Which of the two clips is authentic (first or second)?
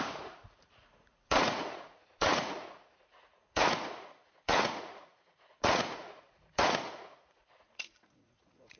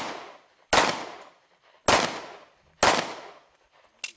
second